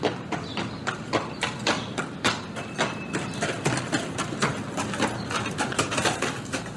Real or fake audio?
real